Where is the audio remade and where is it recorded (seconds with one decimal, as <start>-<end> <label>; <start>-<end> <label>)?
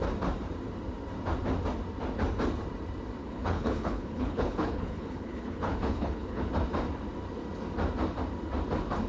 0.0-3.2 recorded; 3.2-6.5 remade; 6.5-9.1 recorded